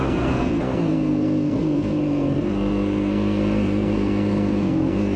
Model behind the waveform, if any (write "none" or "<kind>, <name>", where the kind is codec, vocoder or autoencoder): codec, SNAC